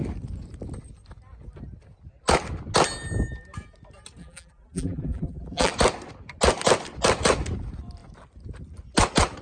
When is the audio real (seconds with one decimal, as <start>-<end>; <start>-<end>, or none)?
0.0-4.2; 5.7-9.4